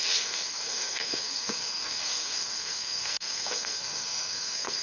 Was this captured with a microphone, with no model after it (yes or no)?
no